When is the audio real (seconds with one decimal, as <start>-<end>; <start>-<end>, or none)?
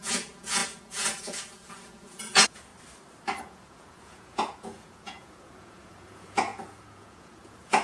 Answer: 2.7-3.4